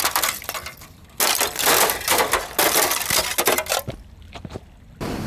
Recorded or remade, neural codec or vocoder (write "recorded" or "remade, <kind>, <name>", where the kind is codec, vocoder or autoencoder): recorded